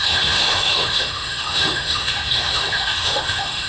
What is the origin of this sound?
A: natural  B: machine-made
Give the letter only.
B